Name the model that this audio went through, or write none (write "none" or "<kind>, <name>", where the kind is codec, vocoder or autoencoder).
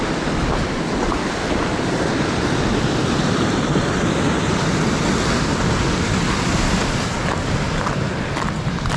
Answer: none